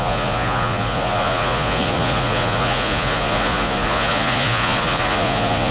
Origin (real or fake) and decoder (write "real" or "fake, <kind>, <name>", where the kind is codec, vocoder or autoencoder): fake, vocoder, Vocos